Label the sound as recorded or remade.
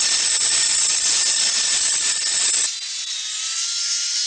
recorded